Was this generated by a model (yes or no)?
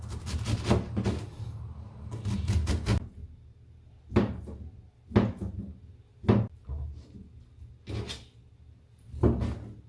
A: no